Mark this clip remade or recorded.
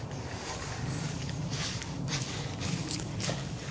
remade